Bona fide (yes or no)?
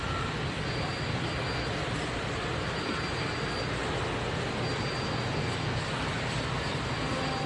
yes